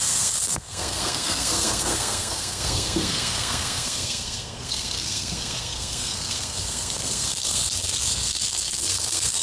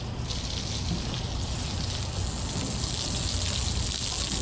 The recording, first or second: second